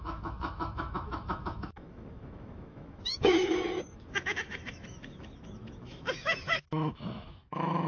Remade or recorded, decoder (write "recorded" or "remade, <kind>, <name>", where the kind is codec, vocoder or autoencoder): remade, autoencoder, DAC-VAE